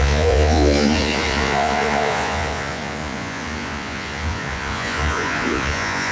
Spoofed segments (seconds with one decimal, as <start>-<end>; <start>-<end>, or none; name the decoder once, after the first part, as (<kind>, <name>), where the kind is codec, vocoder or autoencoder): 0.0-6.1 (vocoder, Vocos)